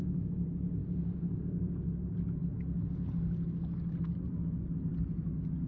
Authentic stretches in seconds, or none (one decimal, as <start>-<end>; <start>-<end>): 0.0-5.7